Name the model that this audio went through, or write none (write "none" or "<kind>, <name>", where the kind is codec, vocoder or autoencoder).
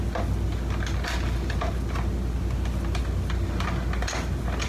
none